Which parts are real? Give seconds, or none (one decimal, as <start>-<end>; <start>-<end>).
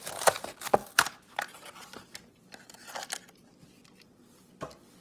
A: 0.0-5.0